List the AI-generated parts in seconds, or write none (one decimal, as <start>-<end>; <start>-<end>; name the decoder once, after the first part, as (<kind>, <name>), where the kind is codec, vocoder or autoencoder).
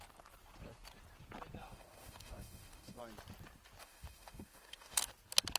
1.6-3.0 (autoencoder, DAC-VAE); 3.8-5.1